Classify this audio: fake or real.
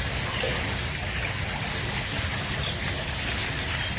real